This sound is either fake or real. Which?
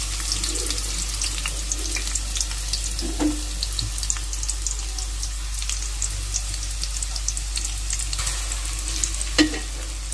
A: real